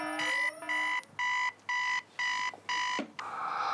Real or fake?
real